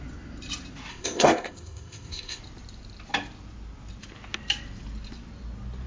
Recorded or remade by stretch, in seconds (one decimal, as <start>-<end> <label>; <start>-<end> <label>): 0.0-0.9 recorded; 0.9-2.4 remade; 2.4-5.9 recorded